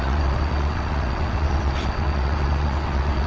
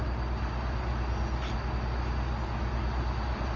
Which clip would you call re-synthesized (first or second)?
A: first